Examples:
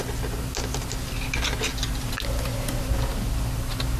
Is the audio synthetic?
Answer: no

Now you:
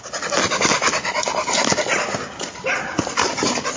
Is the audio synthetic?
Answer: no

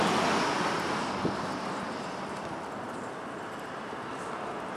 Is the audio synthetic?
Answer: no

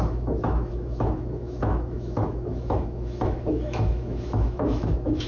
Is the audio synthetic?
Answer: yes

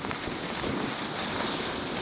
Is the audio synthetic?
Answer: no